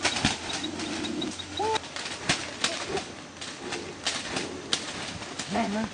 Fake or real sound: real